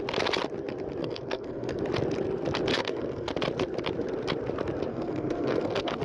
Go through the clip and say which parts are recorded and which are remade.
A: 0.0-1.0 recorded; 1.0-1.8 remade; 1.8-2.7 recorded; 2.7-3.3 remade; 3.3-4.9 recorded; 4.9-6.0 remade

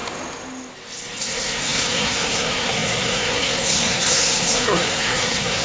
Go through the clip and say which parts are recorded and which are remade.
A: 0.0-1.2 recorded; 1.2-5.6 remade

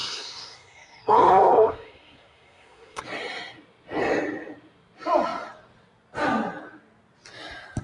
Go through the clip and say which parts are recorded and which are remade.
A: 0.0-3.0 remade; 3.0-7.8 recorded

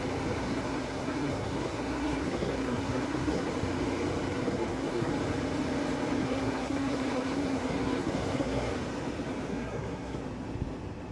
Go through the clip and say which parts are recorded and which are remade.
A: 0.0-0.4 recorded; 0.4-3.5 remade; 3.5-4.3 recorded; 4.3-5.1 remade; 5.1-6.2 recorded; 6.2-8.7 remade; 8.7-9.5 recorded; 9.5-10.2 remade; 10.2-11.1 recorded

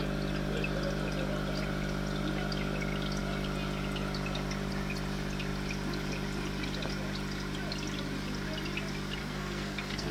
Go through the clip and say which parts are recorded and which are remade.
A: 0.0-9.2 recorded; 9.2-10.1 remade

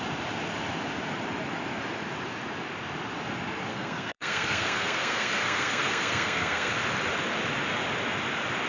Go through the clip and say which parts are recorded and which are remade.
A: 0.0-3.7 recorded; 3.7-6.7 remade; 6.7-8.7 recorded